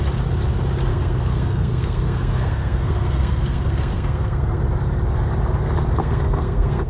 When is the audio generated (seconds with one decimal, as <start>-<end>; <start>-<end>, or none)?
0.9-4.6; 6.0-6.9

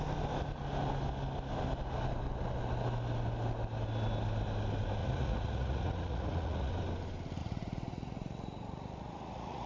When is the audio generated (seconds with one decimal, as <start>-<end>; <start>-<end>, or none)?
5.0-6.7; 7.4-9.7